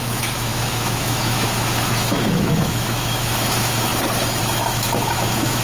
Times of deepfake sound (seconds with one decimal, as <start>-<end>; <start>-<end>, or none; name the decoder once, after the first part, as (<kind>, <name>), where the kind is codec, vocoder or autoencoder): 0.0-3.9 (autoencoder, DAC-VAE); 4.4-5.6